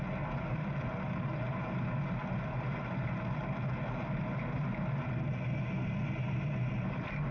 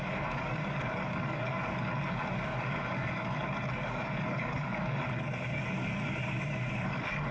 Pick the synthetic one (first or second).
second